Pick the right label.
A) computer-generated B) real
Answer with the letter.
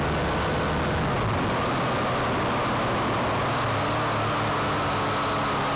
B